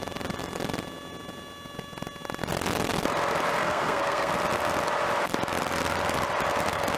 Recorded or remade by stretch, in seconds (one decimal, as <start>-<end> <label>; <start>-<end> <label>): 0.0-3.6 recorded; 3.6-4.3 remade; 4.3-7.0 recorded